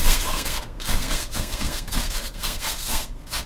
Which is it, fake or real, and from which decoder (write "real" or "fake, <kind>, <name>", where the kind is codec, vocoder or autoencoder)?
fake, codec, SNAC